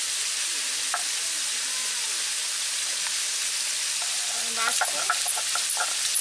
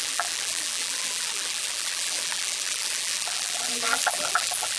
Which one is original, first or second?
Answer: first